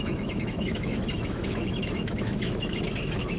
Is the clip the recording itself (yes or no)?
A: no